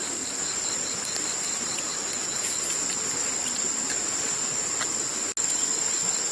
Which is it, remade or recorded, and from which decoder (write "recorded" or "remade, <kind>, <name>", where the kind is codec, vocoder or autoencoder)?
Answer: recorded